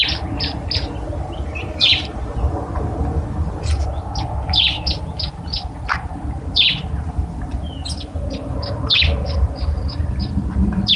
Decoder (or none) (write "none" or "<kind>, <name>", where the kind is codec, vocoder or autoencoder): none